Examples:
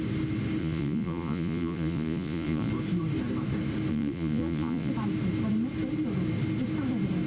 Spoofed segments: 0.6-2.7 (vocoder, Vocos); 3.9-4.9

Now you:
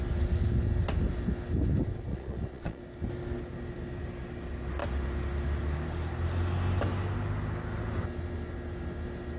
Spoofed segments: 2.1-2.8 (vocoder, Vocos)